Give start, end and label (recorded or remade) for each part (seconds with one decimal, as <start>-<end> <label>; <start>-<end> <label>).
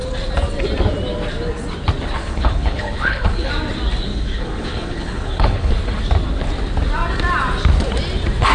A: 0.0-2.2 recorded; 2.2-3.5 remade; 3.5-4.1 recorded; 4.1-5.7 remade; 5.7-8.5 recorded